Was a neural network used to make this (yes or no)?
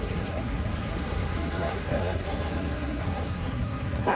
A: yes